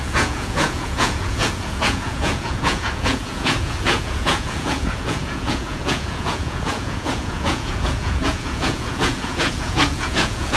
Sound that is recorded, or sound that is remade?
remade